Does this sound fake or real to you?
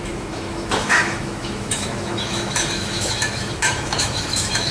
fake